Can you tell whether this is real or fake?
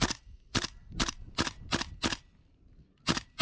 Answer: real